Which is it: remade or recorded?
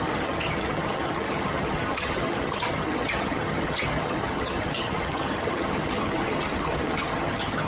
remade